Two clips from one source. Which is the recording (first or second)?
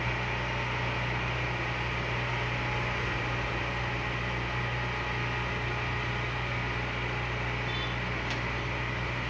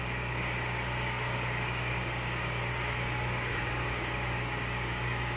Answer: first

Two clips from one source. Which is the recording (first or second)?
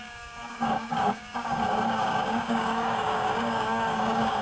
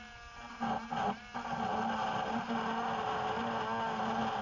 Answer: second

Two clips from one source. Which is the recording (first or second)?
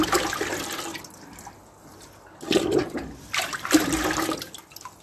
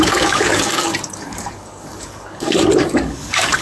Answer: first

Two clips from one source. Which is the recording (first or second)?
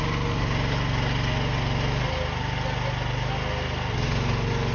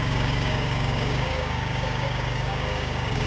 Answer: first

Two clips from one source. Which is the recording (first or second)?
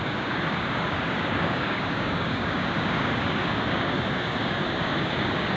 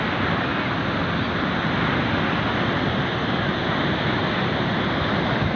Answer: second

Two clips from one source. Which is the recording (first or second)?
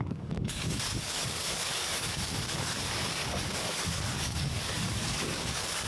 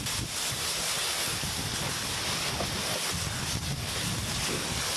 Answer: second